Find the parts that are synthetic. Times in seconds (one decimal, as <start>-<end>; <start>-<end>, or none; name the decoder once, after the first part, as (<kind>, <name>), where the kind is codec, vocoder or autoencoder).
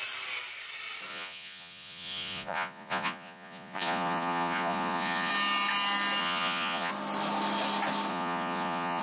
1.1-5.3 (vocoder, Vocos); 6.2-6.9; 8.1-9.0